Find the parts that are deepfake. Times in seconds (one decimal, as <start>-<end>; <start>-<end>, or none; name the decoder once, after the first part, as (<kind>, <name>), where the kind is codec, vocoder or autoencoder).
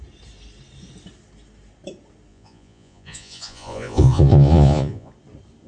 2.3-5.1 (vocoder, Vocos)